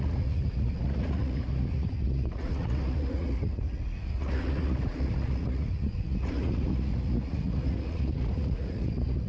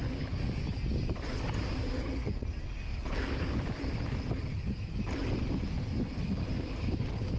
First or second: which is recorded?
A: second